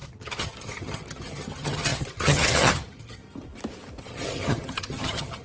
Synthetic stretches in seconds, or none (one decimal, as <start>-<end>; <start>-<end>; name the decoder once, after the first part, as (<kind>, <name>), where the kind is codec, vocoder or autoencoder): 0.0-3.2 (vocoder, HiFi-GAN); 4.0-5.4